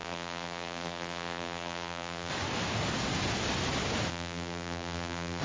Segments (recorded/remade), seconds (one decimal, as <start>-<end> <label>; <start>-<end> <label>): 0.0-2.3 remade; 2.3-4.1 recorded; 4.1-5.4 remade